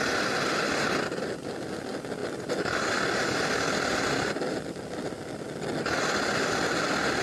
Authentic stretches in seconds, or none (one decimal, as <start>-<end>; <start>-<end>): 0.0-7.2